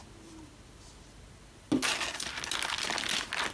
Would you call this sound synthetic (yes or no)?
no